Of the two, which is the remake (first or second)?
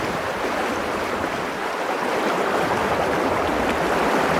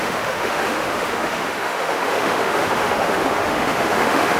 second